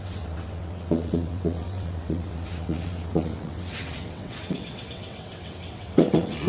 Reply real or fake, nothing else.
fake